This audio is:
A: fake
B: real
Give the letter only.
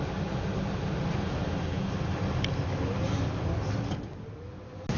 B